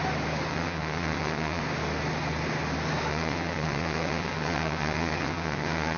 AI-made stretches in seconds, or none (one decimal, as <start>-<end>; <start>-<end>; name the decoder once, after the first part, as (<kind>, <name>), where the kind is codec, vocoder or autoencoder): 0.5-1.6 (vocoder, WaveNeXt); 3.1-6.0